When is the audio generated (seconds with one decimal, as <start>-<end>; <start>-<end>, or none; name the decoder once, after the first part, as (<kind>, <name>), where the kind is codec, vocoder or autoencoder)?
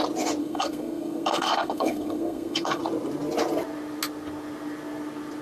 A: 0.4-2.8 (codec, SNAC)